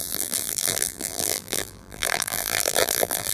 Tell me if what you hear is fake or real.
fake